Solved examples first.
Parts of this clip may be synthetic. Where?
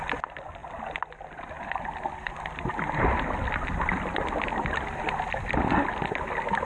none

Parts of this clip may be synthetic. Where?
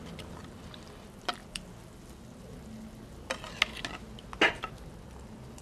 none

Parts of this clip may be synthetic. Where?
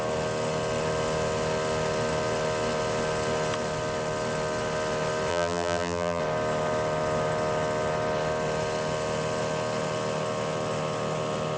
5.3-6.2 (vocoder, BigVGAN v2)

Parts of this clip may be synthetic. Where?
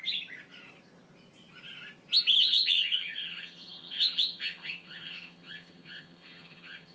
2.4-6.9 (vocoder, HiFi-GAN)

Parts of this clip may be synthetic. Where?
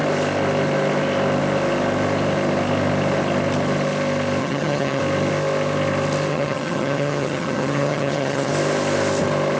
4.4-5.0 (vocoder, HiFi-GAN); 6.3-8.5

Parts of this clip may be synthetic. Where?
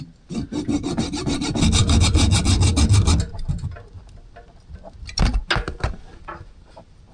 none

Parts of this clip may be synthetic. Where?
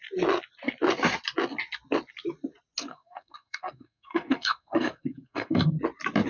2.9-5.8 (codec, SNAC)